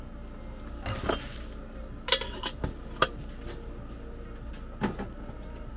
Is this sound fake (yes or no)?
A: no